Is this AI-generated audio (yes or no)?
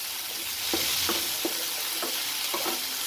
no